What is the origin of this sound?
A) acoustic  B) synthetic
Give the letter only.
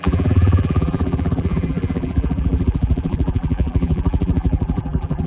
B